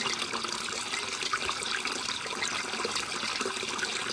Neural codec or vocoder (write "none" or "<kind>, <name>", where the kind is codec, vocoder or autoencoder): none